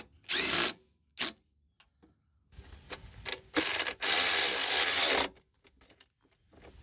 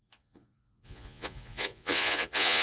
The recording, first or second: first